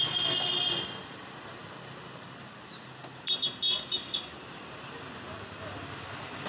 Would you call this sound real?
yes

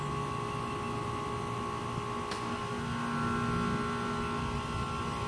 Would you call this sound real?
yes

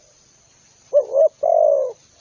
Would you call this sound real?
yes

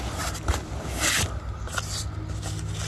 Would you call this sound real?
yes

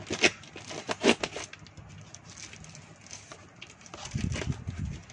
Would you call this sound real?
yes